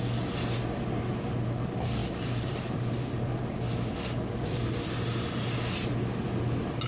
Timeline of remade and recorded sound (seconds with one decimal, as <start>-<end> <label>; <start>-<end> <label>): 0.0-2.0 recorded; 2.0-4.9 remade; 4.9-6.9 recorded